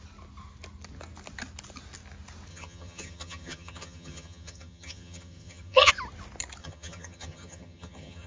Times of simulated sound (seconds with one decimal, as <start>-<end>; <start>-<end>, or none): 2.5-5.9; 6.6-8.3